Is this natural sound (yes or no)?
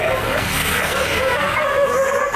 no